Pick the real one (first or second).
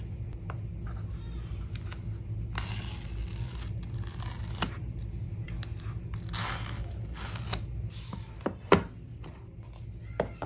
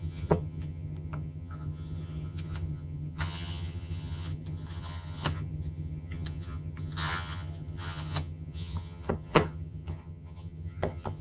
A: first